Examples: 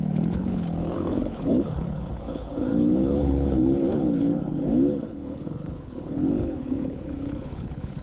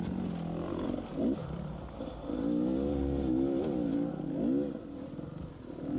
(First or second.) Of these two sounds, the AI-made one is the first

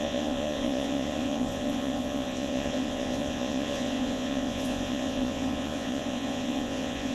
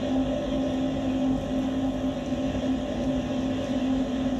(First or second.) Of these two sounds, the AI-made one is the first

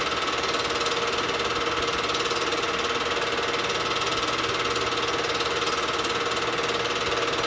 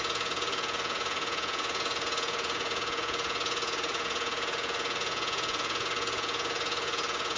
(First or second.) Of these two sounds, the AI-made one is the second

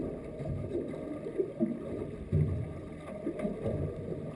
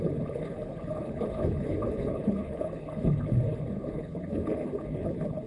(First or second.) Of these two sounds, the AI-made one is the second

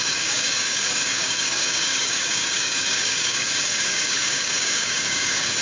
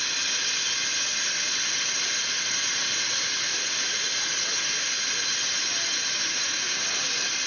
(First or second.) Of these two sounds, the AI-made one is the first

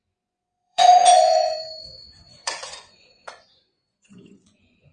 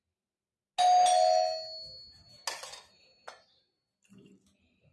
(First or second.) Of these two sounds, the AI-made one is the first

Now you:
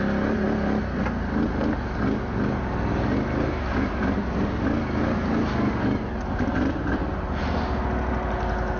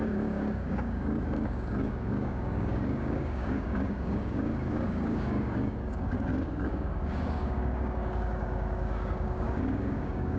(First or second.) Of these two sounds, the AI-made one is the second